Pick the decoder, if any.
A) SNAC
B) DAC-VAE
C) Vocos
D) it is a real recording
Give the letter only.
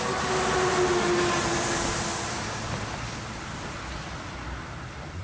D